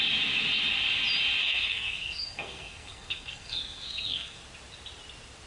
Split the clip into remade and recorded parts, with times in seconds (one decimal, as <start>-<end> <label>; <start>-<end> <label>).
0.0-1.4 recorded; 1.4-4.4 remade; 4.4-5.5 recorded